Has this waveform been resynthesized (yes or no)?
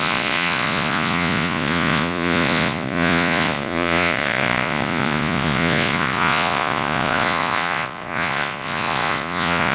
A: yes